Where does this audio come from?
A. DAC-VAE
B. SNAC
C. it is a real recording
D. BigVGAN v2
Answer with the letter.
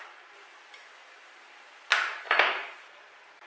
C